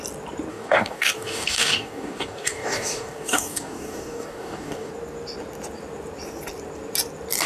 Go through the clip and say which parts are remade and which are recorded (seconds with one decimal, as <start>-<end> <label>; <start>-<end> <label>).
0.0-0.5 recorded; 0.5-4.9 remade; 4.9-7.5 recorded

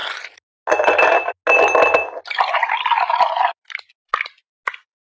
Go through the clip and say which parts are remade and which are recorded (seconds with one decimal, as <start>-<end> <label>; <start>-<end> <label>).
0.0-5.1 recorded

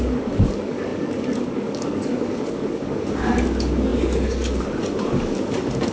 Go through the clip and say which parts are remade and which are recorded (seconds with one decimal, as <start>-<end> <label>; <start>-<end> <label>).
0.0-5.9 remade

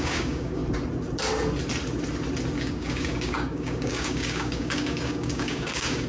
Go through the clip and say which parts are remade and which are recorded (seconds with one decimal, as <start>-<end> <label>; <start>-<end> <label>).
0.0-0.6 remade; 0.6-2.6 recorded; 2.6-6.1 remade

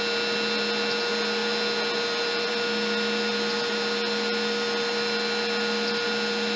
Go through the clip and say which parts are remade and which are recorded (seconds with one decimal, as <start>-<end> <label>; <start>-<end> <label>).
0.0-6.6 recorded

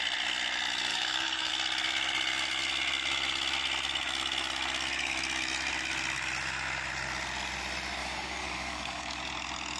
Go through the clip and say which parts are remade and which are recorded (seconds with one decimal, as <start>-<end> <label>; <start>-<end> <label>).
0.0-0.9 recorded; 0.9-1.5 remade; 1.5-8.0 recorded; 8.0-9.2 remade; 9.2-9.8 recorded

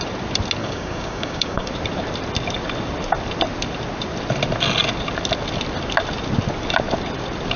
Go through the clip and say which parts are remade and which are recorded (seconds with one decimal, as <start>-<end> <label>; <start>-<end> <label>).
0.0-0.6 recorded; 0.6-1.7 remade; 1.7-7.6 recorded

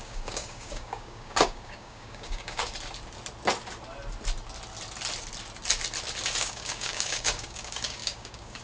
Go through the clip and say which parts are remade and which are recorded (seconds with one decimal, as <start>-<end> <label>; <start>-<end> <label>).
0.0-2.6 remade; 2.6-6.4 recorded; 6.4-8.6 remade